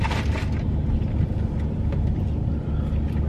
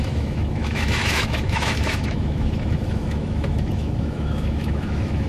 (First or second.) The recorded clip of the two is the first